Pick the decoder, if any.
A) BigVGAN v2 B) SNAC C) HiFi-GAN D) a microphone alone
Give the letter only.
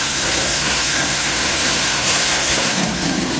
B